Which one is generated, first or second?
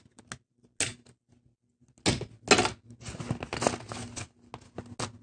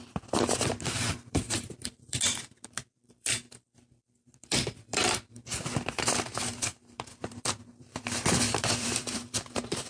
second